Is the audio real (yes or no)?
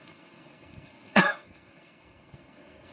no